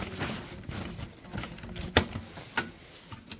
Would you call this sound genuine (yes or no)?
yes